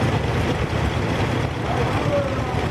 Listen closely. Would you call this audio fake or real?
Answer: real